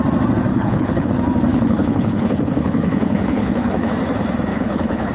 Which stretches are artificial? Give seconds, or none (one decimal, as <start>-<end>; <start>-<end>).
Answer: 0.5-1.1; 1.5-3.9; 4.5-5.1